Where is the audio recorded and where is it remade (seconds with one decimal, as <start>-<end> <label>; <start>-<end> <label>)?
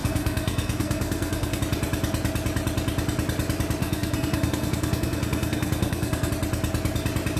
0.0-1.6 remade; 1.6-3.8 recorded; 3.8-6.3 remade; 6.3-7.4 recorded